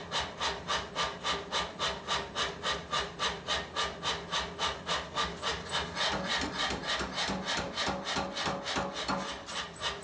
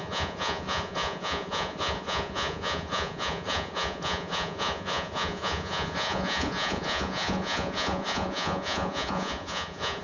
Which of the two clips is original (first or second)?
first